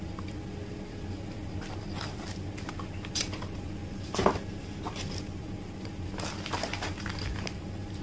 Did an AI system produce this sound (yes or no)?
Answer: no